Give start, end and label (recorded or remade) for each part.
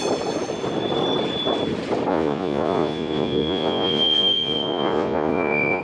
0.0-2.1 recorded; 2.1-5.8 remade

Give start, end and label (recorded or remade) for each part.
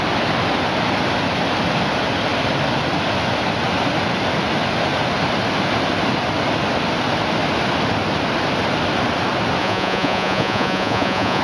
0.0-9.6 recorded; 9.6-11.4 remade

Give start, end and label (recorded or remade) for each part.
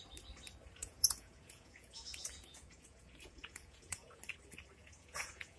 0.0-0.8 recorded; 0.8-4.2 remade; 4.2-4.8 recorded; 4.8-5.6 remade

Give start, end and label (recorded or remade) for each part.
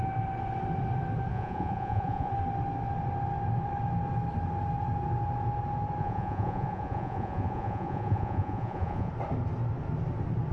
0.0-1.3 recorded; 1.3-2.3 remade; 2.3-6.0 recorded; 6.0-9.1 remade; 9.1-10.5 recorded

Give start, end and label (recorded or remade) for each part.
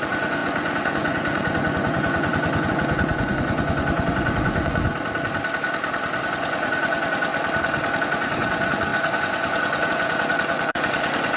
0.0-4.9 remade; 4.9-6.3 recorded; 6.3-7.3 remade; 7.3-8.0 recorded; 8.0-11.4 remade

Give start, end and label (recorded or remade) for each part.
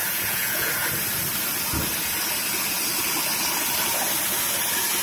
0.0-0.7 remade; 0.7-5.0 recorded